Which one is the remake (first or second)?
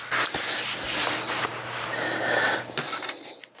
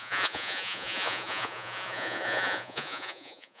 second